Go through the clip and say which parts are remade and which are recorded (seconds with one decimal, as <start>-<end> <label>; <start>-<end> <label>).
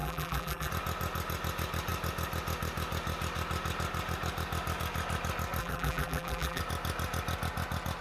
0.0-0.7 remade; 0.7-5.6 recorded; 5.6-6.6 remade; 6.6-8.0 recorded